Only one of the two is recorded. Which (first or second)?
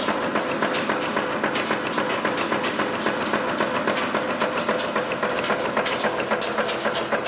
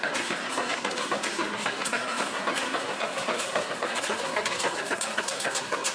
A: first